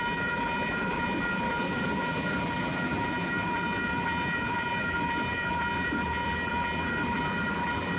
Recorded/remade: remade